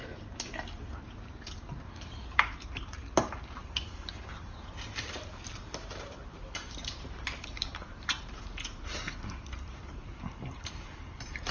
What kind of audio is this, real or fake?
fake